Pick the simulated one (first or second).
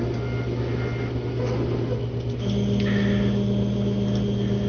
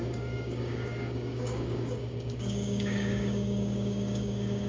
second